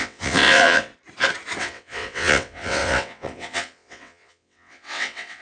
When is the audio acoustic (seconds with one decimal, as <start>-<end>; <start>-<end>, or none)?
0.9-1.6